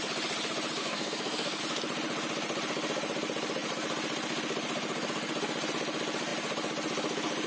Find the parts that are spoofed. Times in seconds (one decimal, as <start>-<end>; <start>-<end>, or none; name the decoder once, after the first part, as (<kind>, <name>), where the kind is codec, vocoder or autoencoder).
0.8-1.6 (codec, SNAC)